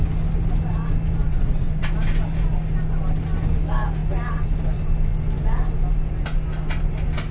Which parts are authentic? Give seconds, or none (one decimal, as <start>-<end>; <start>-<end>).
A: 0.0-1.2; 1.9-7.3